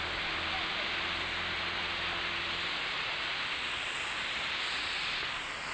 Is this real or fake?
real